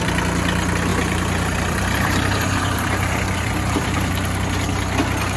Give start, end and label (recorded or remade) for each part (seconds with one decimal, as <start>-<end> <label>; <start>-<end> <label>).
0.0-0.9 recorded; 0.9-4.1 remade; 4.1-5.4 recorded